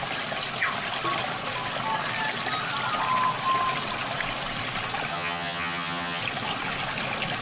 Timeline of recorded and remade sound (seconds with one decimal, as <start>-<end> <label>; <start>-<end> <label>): 0.0-5.1 recorded; 5.1-6.2 remade; 6.2-7.4 recorded